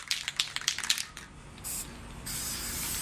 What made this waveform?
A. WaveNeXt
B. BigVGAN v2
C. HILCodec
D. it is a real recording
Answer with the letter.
D